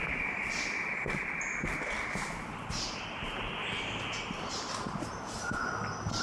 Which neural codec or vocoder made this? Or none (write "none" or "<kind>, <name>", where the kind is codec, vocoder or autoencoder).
none